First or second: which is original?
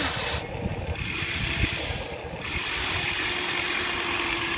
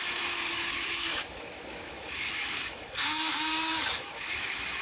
first